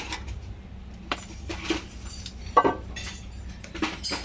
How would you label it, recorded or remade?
remade